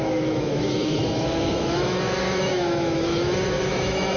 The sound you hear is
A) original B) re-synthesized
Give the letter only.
B